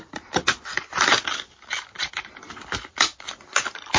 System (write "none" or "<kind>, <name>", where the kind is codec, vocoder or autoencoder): none